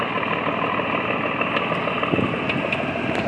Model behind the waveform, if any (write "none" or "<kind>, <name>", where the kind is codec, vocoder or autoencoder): none